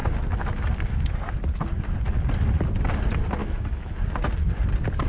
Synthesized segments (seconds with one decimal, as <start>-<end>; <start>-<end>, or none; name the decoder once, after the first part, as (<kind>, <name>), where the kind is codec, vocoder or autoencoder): 3.4-3.9 (autoencoder, DAC-VAE)